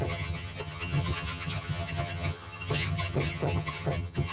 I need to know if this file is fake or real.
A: fake